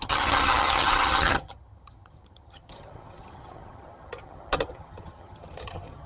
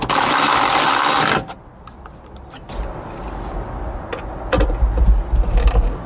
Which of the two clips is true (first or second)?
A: second